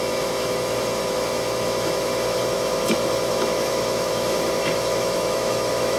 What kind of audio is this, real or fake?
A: fake